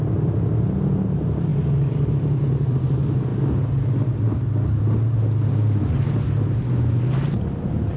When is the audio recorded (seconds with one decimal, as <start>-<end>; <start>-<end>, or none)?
0.0-8.0